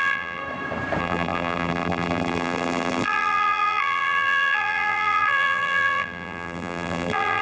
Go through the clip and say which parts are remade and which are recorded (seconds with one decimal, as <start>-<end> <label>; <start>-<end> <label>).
0.0-0.4 remade; 0.4-1.0 recorded; 1.0-7.4 remade